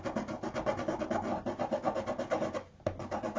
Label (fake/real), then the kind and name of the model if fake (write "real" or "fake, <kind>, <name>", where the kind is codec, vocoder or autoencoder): real